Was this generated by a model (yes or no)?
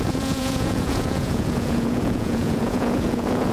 yes